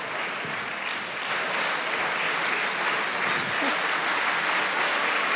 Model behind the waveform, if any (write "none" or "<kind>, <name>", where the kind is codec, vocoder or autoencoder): none